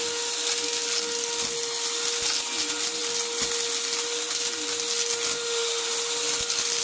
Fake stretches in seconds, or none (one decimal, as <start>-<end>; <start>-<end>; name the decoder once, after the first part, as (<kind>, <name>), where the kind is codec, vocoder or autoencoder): none